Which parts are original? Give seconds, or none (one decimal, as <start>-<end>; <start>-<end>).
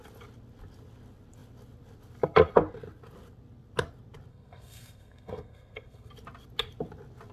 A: 0.0-4.3; 6.1-7.3